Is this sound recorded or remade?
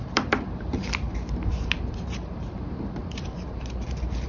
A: remade